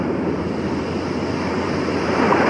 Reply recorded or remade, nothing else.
recorded